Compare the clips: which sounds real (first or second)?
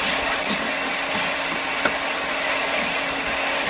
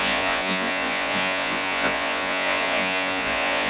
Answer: first